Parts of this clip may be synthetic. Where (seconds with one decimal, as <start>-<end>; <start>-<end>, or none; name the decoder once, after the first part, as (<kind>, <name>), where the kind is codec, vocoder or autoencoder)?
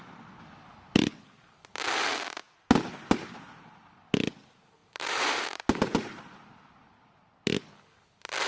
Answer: 4.8-5.6 (vocoder, BigVGAN v2)